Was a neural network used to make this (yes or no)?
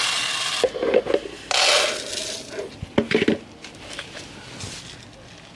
no